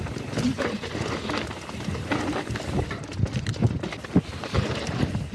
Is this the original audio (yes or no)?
yes